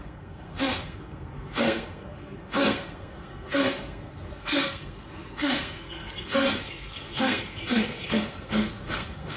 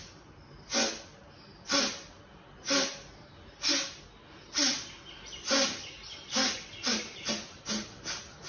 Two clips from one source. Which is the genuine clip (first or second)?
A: second